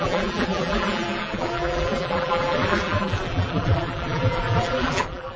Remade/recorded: remade